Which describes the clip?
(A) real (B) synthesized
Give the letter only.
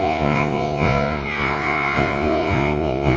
B